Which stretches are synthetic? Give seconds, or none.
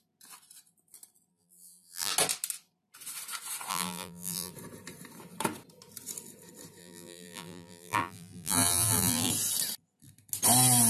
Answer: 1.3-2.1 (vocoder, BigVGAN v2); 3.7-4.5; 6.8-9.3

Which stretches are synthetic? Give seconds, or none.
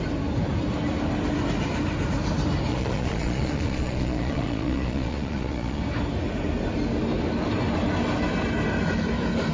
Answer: 2.7-5.8 (vocoder, Vocos)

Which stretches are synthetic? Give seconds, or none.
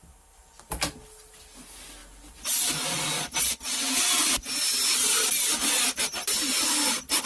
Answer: none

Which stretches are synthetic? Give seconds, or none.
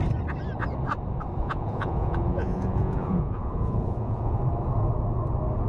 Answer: 1.4-4.4 (vocoder, Vocos)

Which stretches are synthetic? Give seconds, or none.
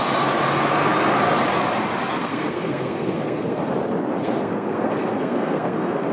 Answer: 2.2-3.7 (codec, SNAC); 4.2-6.1